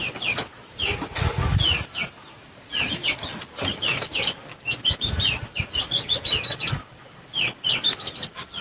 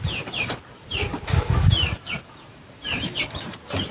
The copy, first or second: second